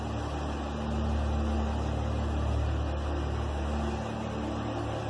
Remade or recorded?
recorded